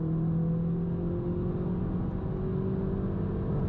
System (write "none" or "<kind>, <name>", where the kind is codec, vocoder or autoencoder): none